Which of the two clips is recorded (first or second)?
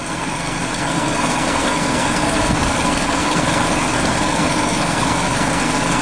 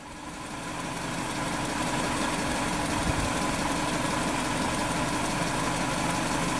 second